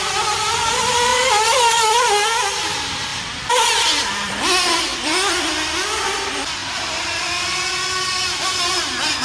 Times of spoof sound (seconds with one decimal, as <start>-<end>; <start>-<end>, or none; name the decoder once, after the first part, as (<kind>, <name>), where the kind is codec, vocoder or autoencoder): 1.1-2.0 (vocoder, BigVGAN v2); 3.1-4.4; 4.9-5.9